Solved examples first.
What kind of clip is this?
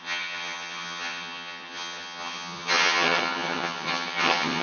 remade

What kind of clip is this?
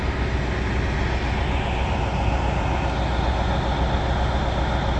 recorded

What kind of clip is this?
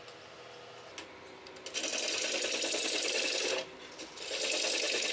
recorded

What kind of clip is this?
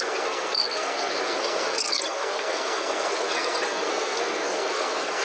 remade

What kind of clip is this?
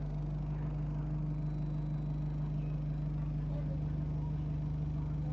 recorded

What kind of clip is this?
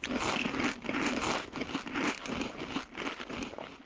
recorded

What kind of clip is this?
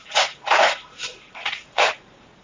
remade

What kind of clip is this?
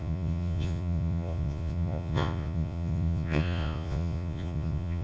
remade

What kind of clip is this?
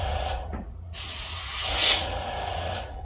remade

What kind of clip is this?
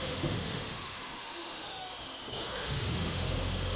remade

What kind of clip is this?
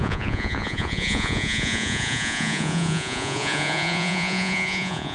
remade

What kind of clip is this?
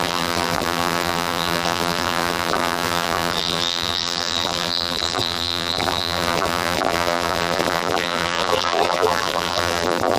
remade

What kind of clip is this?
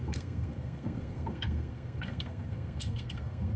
remade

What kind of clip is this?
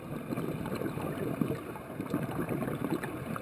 remade